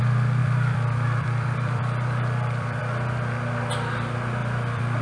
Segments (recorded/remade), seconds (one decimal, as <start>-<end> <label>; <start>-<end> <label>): 0.0-0.4 recorded; 0.4-2.8 remade; 2.8-4.4 recorded; 4.4-5.0 remade